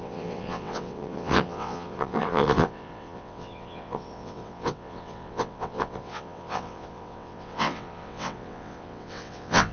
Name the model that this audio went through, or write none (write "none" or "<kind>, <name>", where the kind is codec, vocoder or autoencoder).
vocoder, WaveNeXt